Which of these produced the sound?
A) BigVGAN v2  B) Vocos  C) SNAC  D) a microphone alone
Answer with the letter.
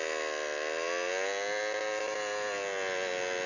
D